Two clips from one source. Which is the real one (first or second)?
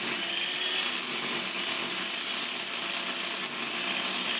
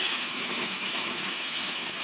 first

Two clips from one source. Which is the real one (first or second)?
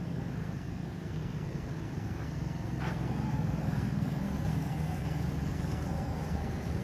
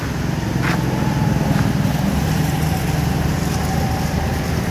second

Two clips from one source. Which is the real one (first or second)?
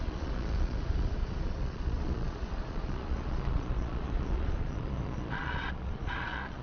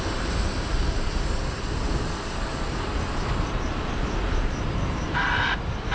second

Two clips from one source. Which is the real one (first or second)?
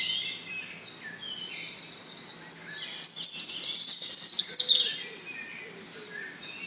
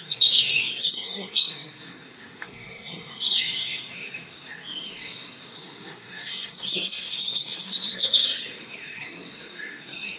first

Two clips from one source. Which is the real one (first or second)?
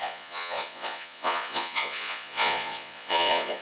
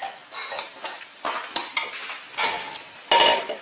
second